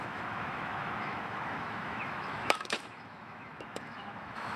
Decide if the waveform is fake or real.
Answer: fake